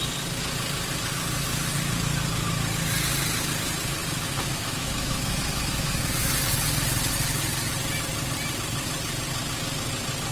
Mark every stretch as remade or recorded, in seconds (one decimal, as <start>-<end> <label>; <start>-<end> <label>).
0.0-4.0 recorded; 4.0-6.3 remade; 6.3-10.3 recorded

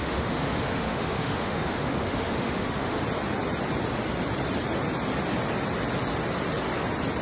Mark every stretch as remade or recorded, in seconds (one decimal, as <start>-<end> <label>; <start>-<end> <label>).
0.0-3.0 remade; 3.0-7.2 recorded